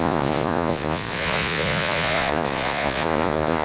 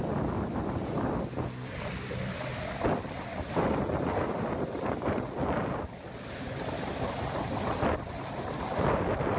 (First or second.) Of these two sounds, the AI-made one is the first